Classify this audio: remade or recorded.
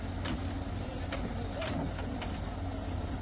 recorded